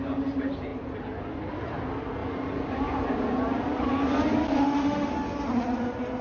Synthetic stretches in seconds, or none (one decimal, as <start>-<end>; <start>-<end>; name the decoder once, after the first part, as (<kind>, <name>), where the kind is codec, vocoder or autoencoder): 4.5-5.1 (autoencoder, DAC-VAE)